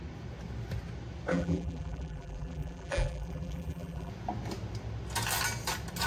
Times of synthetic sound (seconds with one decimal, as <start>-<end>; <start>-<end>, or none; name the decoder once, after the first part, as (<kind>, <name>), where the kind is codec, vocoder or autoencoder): 1.3-4.1 (vocoder, BigVGAN v2)